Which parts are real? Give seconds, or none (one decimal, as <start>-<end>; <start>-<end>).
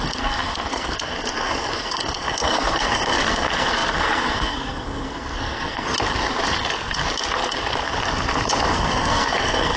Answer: 5.9-8.7